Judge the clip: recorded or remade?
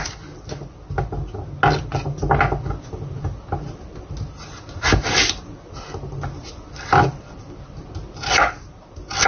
recorded